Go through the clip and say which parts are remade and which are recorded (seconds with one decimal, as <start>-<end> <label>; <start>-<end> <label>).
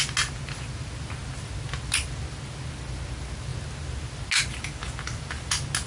0.0-5.9 recorded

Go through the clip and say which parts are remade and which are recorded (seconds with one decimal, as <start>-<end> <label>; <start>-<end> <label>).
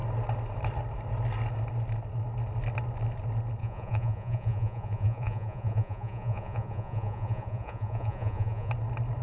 0.0-3.6 recorded; 3.6-8.7 remade; 8.7-9.2 recorded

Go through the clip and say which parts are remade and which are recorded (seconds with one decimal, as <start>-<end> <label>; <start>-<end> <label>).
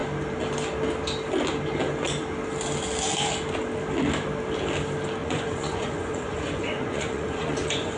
0.0-5.2 recorded; 5.2-8.0 remade